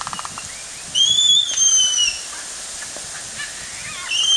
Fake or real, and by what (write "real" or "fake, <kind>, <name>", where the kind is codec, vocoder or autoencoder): real